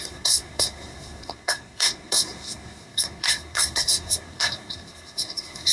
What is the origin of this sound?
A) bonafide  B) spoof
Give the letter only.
B